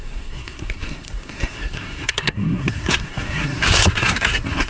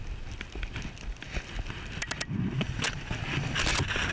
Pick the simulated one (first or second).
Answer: first